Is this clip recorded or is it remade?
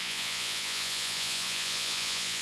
remade